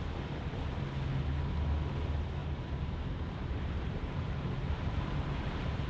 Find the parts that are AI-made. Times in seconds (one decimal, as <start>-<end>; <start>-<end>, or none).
2.4-5.9